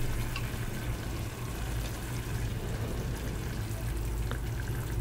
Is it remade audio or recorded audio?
recorded